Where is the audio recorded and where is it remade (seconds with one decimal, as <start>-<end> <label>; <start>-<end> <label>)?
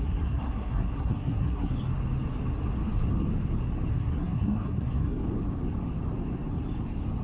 0.0-1.7 remade; 1.7-3.9 recorded; 3.9-5.2 remade; 5.2-7.2 recorded